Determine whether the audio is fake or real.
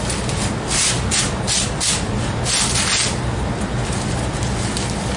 real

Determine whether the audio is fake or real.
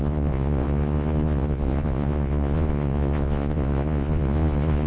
fake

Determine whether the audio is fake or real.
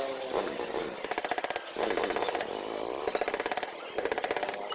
real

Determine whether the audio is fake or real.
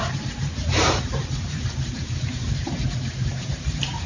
fake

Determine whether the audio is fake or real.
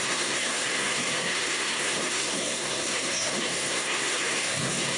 fake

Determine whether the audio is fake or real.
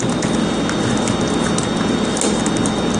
real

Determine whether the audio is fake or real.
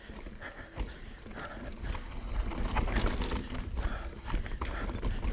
real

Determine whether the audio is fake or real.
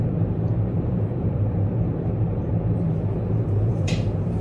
fake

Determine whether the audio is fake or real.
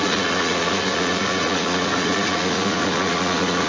fake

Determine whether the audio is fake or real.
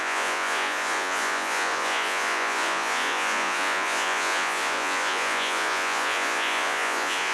fake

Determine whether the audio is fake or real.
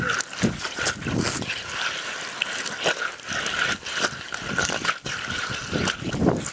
real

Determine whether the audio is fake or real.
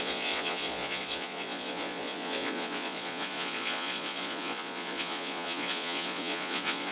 fake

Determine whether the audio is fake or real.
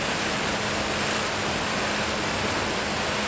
real